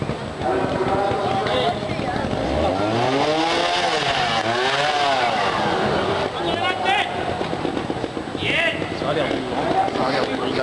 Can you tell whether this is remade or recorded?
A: recorded